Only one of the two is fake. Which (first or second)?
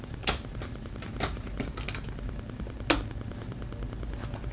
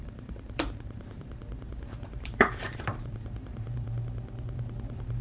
second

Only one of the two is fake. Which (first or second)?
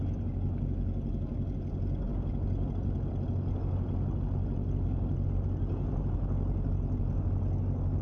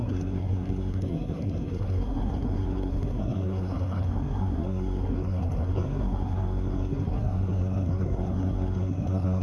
second